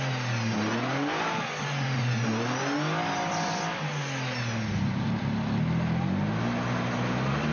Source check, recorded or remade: recorded